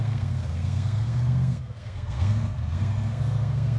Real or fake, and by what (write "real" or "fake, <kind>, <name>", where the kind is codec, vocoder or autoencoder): fake, codec, SNAC